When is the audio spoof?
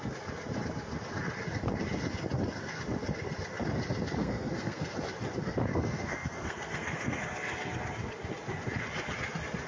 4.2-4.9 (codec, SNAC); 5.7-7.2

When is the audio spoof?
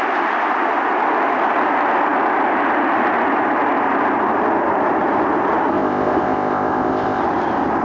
5.7-7.2 (codec, ZipCodec)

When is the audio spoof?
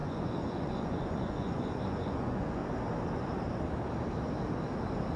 0.0-2.6 (vocoder, Vocos)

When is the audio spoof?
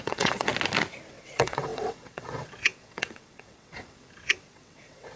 0.0-0.5 (vocoder, WaveNeXt); 1.1-5.2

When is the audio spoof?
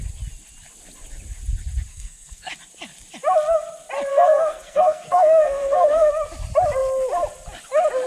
1.9-2.5 (codec, SNAC); 4.1-6.1